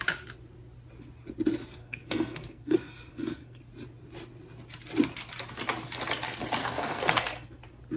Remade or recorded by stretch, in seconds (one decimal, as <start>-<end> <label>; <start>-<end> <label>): 0.0-1.8 recorded; 1.8-3.6 remade; 3.6-6.6 recorded; 6.6-7.6 remade; 7.6-8.0 recorded